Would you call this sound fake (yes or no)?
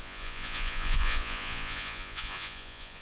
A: yes